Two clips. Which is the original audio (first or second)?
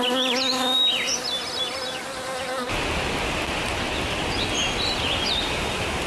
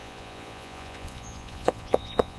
first